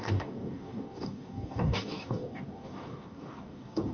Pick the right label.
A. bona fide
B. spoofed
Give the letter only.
B